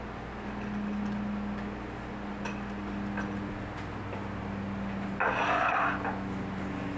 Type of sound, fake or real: real